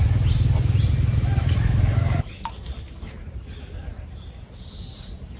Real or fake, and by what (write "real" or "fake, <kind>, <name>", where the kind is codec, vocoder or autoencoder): real